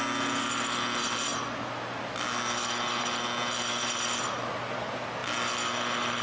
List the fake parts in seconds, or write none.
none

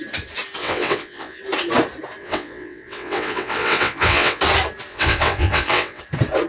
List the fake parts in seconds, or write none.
0.6-1.4 (vocoder, WaveNeXt); 2.2-4.4; 4.9-6.0

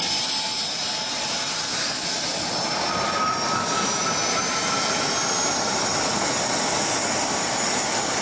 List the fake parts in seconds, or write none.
none

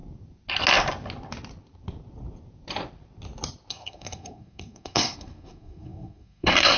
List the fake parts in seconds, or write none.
3.7-6.8 (codec, SNAC)